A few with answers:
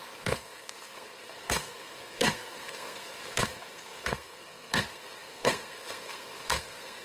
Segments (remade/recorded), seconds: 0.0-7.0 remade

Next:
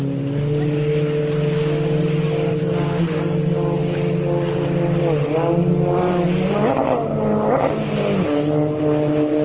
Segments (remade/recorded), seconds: 0.0-9.4 recorded